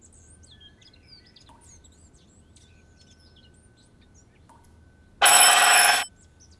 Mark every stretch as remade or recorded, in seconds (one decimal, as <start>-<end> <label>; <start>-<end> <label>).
0.0-5.3 recorded; 5.3-6.0 remade; 6.0-6.6 recorded